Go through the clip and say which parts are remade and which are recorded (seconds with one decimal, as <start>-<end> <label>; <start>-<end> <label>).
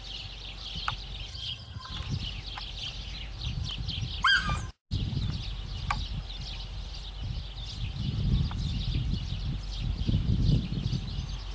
0.0-1.3 recorded; 1.3-1.9 remade; 1.9-11.5 recorded